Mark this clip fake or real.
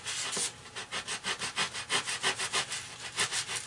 real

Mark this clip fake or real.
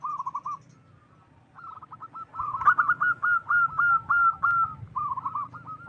real